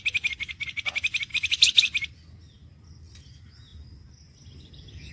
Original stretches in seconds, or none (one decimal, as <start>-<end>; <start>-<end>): 0.0-5.1